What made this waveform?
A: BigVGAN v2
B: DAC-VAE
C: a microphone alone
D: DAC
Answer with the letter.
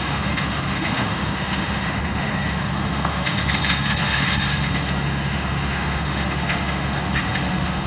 B